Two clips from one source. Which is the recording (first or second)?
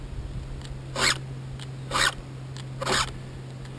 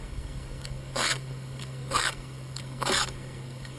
first